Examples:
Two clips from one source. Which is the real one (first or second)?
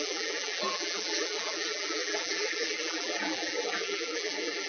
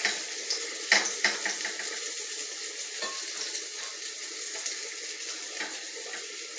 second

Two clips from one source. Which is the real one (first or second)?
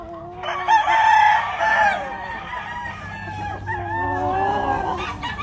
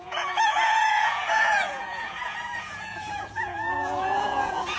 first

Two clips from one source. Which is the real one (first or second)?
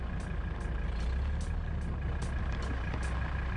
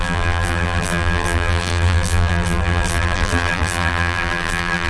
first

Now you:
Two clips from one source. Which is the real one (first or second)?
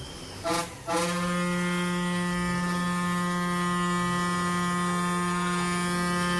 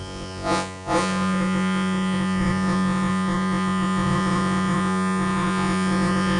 first